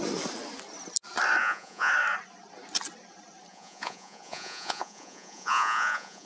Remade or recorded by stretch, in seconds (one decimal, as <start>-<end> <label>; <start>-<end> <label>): 0.0-1.4 recorded; 1.4-1.9 remade; 1.9-3.5 recorded; 3.5-6.3 remade